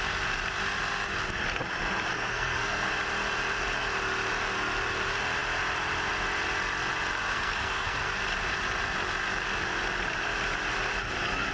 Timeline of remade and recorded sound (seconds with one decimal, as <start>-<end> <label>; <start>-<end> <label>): 0.0-2.1 recorded; 2.1-2.9 remade; 2.9-7.3 recorded; 7.3-8.2 remade; 8.2-11.5 recorded